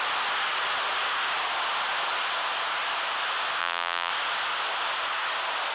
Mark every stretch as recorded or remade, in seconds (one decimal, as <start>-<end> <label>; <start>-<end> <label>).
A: 0.0-3.6 recorded; 3.6-4.1 remade; 4.1-5.7 recorded